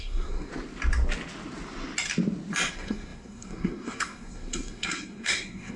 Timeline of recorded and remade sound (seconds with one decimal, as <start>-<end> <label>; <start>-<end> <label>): 0.0-0.5 remade; 0.5-2.7 recorded; 2.7-5.8 remade